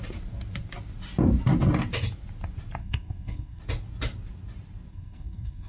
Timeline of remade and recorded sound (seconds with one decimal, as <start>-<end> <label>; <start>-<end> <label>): 0.0-2.8 recorded; 2.8-3.6 remade; 3.6-4.9 recorded; 4.9-5.7 remade